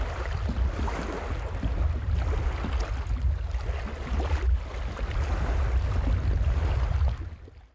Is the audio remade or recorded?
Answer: recorded